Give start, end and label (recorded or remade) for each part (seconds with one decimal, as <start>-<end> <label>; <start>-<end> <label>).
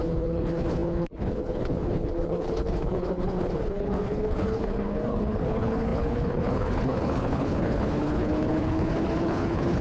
0.0-9.8 remade